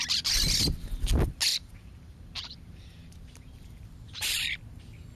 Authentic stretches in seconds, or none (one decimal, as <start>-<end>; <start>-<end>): 0.0-1.5; 4.6-5.1